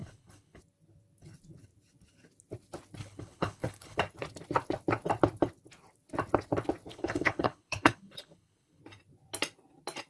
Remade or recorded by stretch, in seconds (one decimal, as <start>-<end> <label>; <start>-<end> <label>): 0.0-0.6 remade; 0.6-3.0 recorded; 3.0-4.0 remade; 4.0-6.9 recorded; 6.9-8.8 remade; 8.8-10.1 recorded